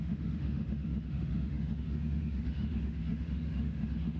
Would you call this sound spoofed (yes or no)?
yes